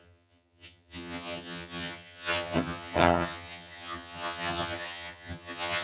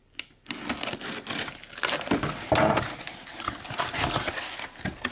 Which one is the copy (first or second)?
first